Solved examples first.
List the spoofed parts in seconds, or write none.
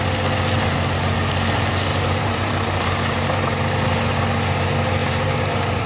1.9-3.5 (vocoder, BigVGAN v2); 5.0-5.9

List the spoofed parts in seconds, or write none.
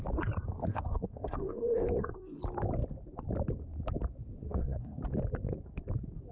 0.7-2.4 (codec, SNAC); 4.4-5.0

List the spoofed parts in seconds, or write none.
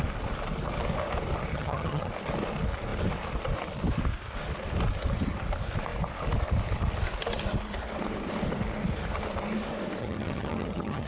1.5-2.1 (vocoder, HiFi-GAN); 10.0-11.1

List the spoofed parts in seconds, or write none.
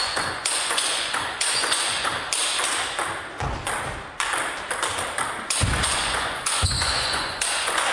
0.0-2.1 (vocoder, Vocos); 5.4-7.9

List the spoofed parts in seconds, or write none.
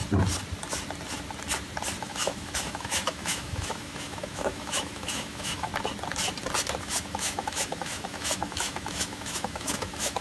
2.0-5.7 (autoencoder, DAC-VAE); 6.8-10.2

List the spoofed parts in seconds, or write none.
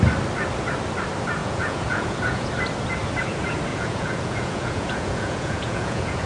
1.4-2.5 (vocoder, Vocos); 3.7-6.3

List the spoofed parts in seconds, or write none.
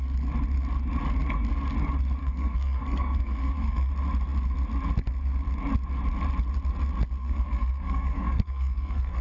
2.2-3.9 (codec, SNAC); 7.2-9.2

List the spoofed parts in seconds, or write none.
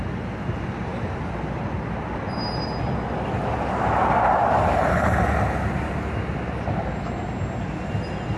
none